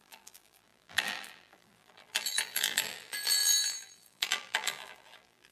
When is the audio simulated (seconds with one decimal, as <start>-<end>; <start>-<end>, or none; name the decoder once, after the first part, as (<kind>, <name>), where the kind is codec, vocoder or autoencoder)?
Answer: 0.0-5.5 (vocoder, BigVGAN v2)